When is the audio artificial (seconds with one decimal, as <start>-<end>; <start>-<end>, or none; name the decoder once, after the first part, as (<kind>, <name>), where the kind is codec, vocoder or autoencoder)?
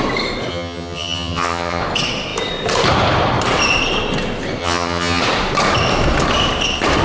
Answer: 0.5-1.8 (vocoder, HiFi-GAN); 4.6-5.2